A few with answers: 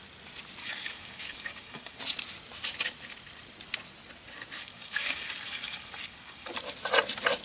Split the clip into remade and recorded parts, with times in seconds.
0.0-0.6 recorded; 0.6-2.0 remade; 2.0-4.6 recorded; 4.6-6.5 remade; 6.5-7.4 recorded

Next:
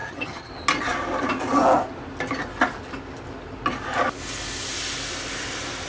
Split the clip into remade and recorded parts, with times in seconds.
0.0-0.5 remade; 0.5-5.9 recorded

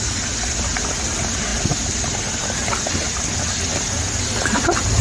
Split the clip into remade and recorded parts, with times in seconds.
0.0-5.0 recorded

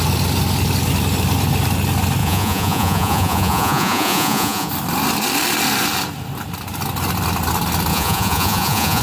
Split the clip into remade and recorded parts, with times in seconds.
0.0-2.2 recorded; 2.2-4.7 remade; 4.7-7.9 recorded; 7.9-9.0 remade

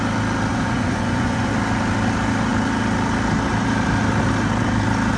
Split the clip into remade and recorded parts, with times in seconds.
0.0-0.5 recorded; 0.5-1.5 remade; 1.5-5.2 recorded

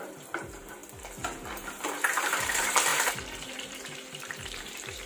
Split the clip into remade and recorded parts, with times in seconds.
0.0-0.8 remade; 0.8-2.2 recorded; 2.2-5.1 remade

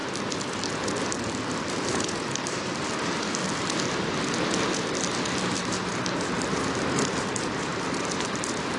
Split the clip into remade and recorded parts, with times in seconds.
0.0-1.5 recorded; 1.5-3.4 remade; 3.4-5.5 recorded; 5.5-8.8 remade

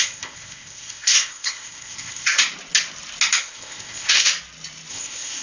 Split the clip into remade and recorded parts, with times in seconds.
0.0-2.4 remade; 2.4-3.4 recorded; 3.4-4.3 remade; 4.3-4.9 recorded; 4.9-5.4 remade